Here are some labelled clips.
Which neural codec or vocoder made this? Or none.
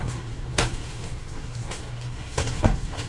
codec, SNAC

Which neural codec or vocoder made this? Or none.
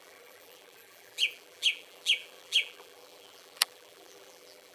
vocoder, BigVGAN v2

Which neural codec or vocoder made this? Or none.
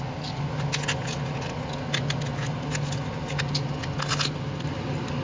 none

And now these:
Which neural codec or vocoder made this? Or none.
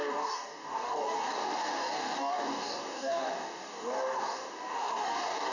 codec, DAC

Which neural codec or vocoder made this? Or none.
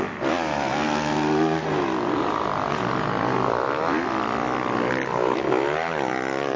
none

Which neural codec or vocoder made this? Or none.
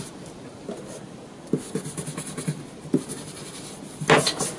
none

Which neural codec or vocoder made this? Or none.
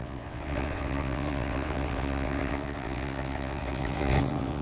vocoder, WaveNeXt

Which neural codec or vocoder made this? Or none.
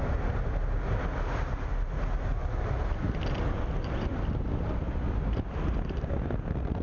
none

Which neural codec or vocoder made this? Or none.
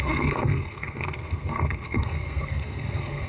codec, SNAC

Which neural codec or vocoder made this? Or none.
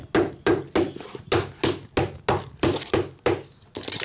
none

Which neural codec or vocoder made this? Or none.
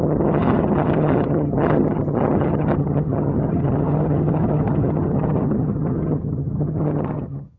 vocoder, HiFi-GAN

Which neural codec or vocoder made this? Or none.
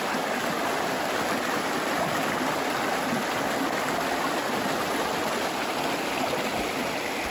none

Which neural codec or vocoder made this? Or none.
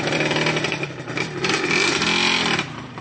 none